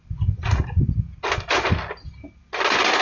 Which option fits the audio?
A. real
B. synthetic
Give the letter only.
A